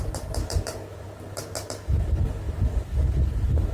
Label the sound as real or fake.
real